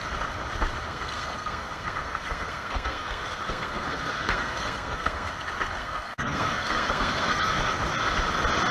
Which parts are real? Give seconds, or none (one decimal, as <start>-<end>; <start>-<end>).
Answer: 0.0-0.9; 5.3-5.8; 7.6-8.7